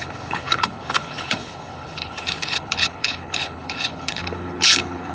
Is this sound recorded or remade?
remade